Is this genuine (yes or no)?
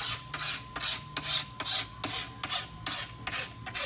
yes